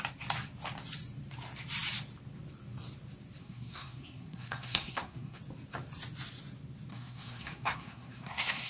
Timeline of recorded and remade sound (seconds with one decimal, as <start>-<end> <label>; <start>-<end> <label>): 0.0-3.4 recorded; 3.4-5.4 remade; 5.4-6.9 recorded; 6.9-8.7 remade